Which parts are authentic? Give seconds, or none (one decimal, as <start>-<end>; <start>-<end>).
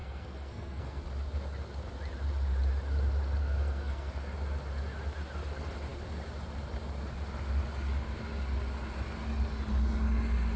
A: 1.0-3.4; 4.1-10.6